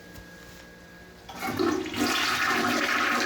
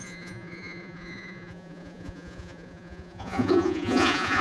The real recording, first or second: first